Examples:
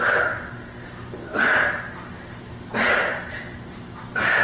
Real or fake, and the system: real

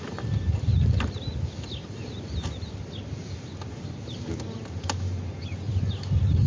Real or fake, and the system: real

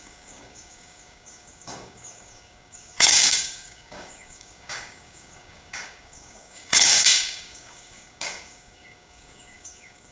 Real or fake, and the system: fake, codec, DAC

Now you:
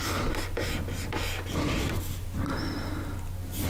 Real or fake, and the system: real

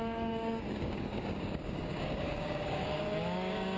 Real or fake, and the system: fake, codec, DAC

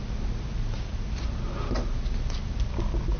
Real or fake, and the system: real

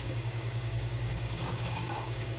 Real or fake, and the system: fake, codec, DAC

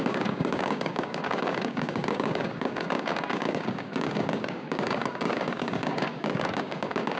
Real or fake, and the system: fake, codec, DAC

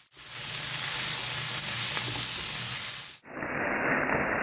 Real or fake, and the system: real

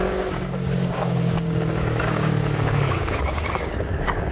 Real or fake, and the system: fake, codec, DAC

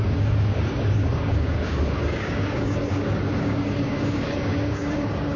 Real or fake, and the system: fake, codec, DAC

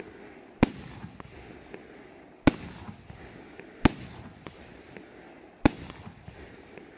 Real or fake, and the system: real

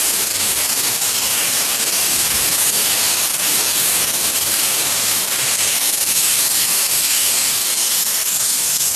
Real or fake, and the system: fake, codec, DAC